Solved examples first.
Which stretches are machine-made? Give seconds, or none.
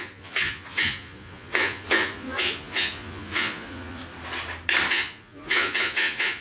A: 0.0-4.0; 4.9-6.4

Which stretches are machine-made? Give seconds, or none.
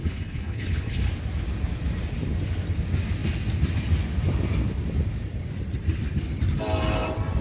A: 0.0-1.1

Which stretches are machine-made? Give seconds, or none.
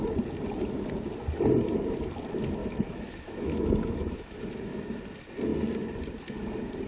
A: 2.6-5.0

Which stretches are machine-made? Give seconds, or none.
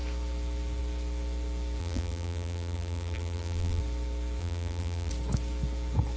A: 1.8-3.8; 4.4-5.1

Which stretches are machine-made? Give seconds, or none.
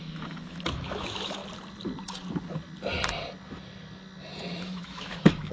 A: 0.0-1.4; 4.6-5.5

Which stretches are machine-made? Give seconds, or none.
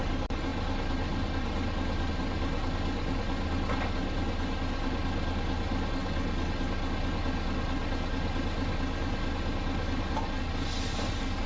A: none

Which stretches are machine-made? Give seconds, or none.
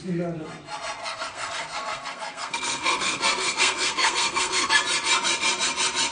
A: 1.0-4.7